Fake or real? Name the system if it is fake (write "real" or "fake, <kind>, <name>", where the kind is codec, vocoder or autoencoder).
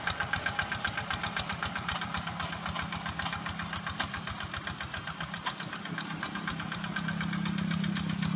real